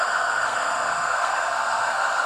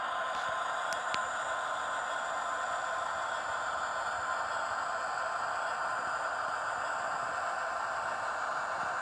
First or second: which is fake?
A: first